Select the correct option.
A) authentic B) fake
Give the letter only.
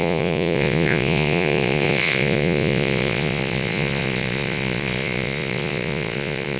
B